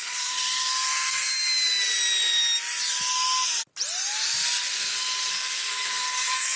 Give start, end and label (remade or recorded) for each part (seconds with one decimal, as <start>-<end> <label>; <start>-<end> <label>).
0.0-1.3 remade; 1.3-5.3 recorded; 5.3-6.6 remade